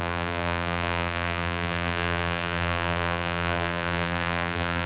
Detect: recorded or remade remade